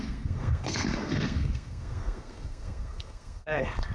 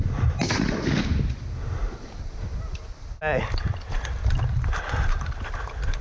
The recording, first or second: second